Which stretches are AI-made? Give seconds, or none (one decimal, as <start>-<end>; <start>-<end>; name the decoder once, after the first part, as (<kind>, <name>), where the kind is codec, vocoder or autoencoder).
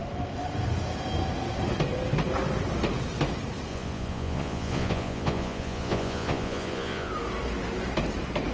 3.7-7.1 (vocoder, Vocos)